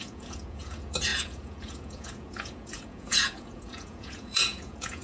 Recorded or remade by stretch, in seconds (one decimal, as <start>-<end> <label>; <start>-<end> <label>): 0.0-5.0 remade